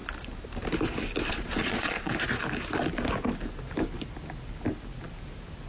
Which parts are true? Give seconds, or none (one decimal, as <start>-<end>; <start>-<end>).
0.0-1.3; 2.1-5.7

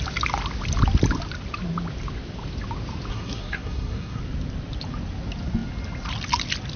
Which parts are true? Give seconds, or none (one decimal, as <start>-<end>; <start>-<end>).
0.0-3.1; 4.2-6.8

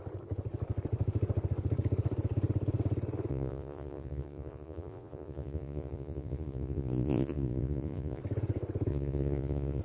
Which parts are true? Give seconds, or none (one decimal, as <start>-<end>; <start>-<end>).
0.0-3.3; 8.2-8.9

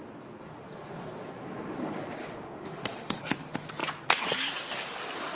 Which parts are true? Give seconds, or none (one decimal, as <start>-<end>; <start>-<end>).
0.0-2.2; 3.2-5.4

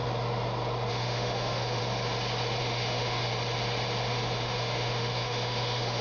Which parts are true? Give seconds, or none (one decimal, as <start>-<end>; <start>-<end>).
0.0-0.9; 1.8-2.6; 3.3-4.1

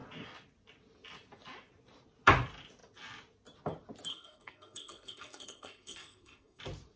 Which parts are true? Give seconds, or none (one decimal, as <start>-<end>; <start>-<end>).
0.0-4.1; 6.6-7.0

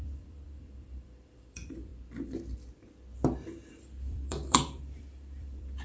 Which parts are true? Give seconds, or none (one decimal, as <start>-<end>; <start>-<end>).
1.9-3.7